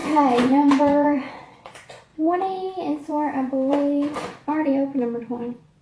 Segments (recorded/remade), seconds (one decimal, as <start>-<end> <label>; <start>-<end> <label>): 0.0-5.8 remade